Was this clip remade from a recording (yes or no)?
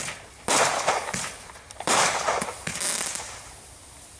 no